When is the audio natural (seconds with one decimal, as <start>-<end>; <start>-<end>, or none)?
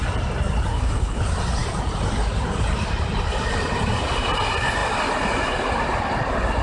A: 0.0-0.7; 1.2-6.6